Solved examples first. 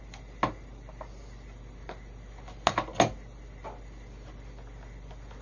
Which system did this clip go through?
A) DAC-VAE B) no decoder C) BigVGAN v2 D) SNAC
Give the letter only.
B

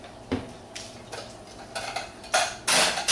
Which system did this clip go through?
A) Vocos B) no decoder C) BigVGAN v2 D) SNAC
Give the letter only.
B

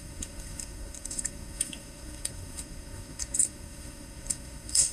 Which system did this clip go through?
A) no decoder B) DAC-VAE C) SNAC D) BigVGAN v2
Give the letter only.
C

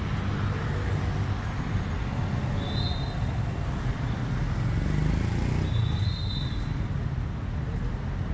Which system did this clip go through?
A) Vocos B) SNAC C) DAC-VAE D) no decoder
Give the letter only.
D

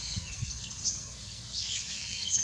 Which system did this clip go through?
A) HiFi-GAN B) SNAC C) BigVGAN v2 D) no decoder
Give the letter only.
B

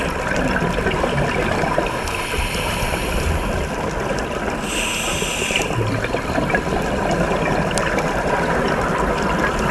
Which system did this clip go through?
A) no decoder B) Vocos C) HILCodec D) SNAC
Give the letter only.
A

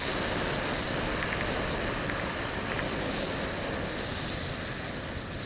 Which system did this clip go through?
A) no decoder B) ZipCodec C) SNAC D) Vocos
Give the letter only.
A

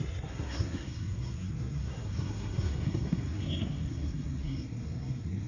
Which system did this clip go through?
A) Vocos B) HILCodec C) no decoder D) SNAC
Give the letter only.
D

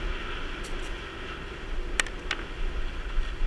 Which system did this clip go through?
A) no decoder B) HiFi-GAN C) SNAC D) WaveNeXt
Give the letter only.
A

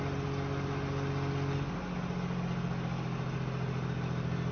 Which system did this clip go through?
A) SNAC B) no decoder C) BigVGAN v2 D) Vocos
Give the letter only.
B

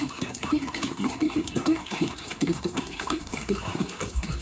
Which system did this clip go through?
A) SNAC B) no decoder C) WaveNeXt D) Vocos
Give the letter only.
A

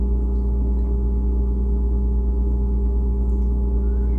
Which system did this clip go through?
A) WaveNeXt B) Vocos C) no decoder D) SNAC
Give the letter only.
C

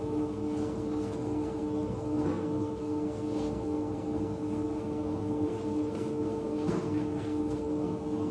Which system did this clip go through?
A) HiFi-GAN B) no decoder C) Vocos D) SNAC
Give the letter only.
D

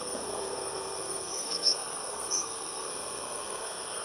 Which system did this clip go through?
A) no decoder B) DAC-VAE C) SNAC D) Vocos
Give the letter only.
C